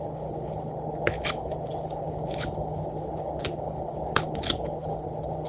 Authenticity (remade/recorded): remade